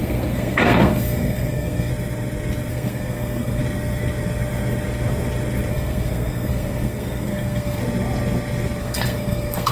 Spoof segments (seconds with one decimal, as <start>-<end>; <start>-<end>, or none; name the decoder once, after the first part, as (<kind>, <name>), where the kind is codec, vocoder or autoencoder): 0.0-1.9 (codec, SNAC); 2.7-3.6; 5.7-7.8; 8.8-9.7